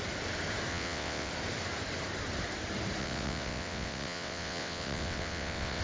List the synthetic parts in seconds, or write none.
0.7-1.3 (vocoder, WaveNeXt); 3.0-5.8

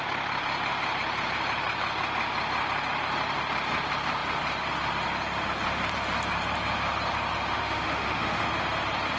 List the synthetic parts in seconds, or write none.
7.5-8.5 (autoencoder, DAC-VAE)